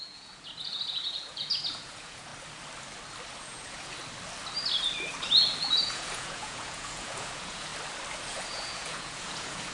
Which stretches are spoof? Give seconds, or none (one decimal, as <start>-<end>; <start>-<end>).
0.0-2.3; 3.4-4.0; 5.6-7.7; 8.3-9.7